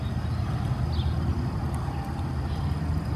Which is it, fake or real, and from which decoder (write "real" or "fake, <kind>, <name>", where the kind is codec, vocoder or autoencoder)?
real